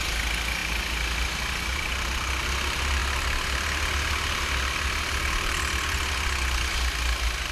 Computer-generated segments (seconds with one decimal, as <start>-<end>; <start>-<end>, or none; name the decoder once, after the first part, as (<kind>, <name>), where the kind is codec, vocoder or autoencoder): none